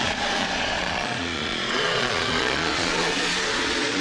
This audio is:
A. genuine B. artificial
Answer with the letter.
B